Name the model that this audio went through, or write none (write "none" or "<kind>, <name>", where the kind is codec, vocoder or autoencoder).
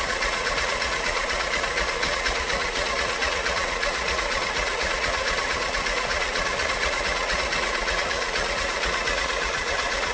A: vocoder, Vocos